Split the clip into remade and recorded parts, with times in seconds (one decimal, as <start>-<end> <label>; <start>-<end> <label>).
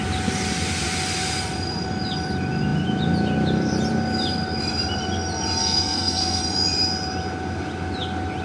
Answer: 0.0-5.6 recorded; 5.6-6.4 remade; 6.4-8.4 recorded